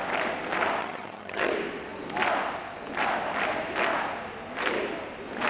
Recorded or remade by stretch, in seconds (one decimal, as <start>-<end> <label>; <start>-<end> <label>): 0.0-0.8 recorded; 0.8-1.5 remade; 1.5-5.5 recorded